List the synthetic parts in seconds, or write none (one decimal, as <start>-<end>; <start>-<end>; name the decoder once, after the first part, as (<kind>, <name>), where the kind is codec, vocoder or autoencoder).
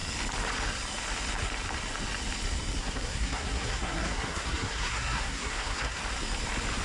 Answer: 2.8-6.0 (codec, SNAC)